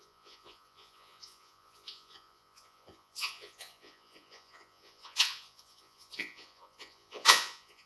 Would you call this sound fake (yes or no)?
yes